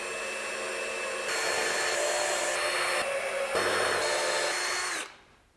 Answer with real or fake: real